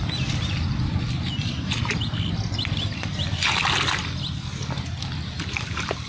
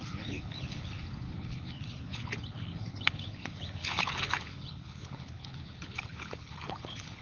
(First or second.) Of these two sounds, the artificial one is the second